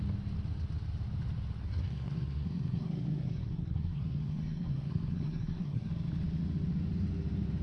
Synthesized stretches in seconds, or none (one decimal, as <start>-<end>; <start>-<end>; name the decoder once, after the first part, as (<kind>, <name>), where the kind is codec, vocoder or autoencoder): 1.6-5.9 (codec, SNAC)